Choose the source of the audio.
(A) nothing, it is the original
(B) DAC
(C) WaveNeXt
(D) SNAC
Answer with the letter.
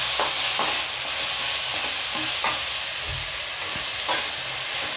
A